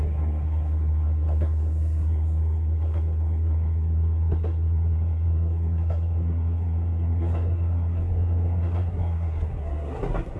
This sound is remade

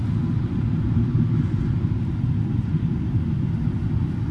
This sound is recorded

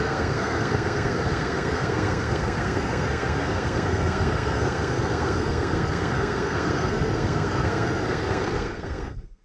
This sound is remade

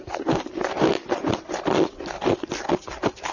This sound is recorded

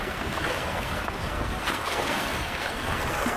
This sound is remade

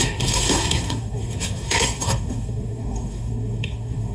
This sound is remade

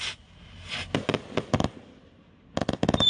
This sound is recorded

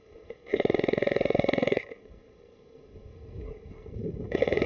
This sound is remade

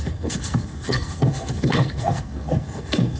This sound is remade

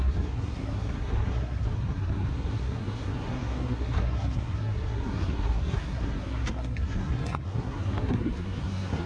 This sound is remade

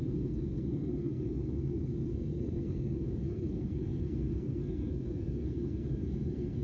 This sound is remade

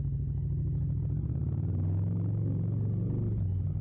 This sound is recorded